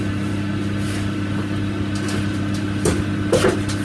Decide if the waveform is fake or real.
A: real